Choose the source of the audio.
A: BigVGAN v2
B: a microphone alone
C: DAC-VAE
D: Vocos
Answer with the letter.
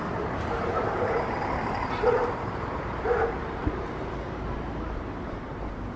A